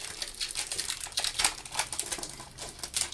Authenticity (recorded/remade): recorded